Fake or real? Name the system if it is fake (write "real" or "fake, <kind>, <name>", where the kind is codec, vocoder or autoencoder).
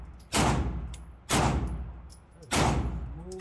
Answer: real